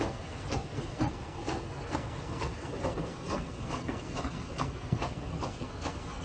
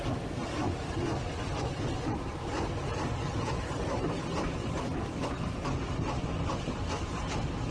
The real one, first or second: second